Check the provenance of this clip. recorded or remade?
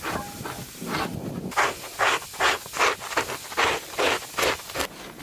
recorded